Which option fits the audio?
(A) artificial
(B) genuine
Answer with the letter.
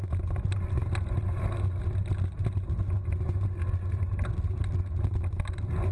B